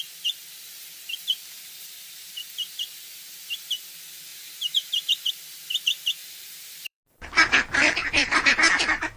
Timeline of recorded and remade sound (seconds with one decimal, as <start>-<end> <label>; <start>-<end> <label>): 0.0-4.3 recorded; 4.3-5.3 remade; 5.3-6.2 recorded; 6.2-7.0 remade; 7.0-8.0 recorded; 8.0-8.5 remade; 8.5-9.2 recorded